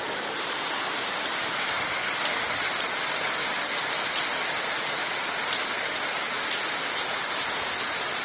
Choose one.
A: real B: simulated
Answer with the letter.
A